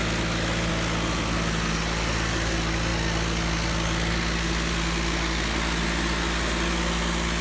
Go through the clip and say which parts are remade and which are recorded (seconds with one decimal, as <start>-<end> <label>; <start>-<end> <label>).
0.0-7.4 recorded